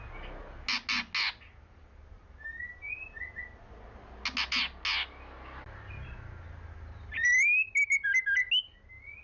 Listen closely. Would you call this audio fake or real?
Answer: real